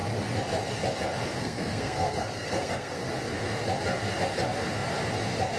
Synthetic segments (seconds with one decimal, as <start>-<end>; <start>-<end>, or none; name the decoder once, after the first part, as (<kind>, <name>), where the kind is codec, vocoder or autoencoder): 1.4-3.1 (codec, SNAC)